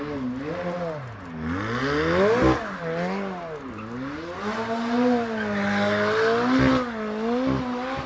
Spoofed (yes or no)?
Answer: no